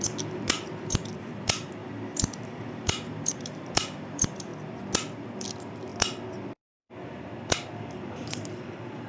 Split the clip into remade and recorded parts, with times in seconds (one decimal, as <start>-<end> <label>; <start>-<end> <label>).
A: 0.0-1.8 remade; 1.8-2.4 recorded; 2.4-4.5 remade; 4.5-5.2 recorded; 5.2-5.9 remade; 5.9-7.7 recorded; 7.7-9.1 remade